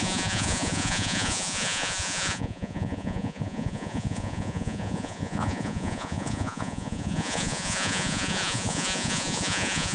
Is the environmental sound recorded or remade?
remade